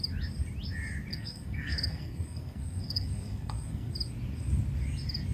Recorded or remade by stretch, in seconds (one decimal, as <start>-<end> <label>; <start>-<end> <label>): 0.0-1.1 recorded; 1.1-3.9 remade; 3.9-5.3 recorded